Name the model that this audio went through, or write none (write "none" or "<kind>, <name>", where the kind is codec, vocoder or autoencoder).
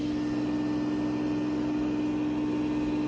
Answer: none